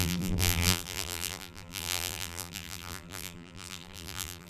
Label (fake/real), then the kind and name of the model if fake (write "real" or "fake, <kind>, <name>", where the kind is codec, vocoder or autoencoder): fake, vocoder, BigVGAN v2